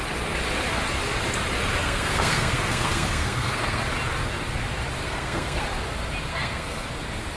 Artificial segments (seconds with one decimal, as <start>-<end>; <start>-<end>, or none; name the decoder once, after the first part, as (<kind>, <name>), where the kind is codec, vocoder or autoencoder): 1.8-3.8 (codec, SNAC); 5.0-5.6; 6.3-6.9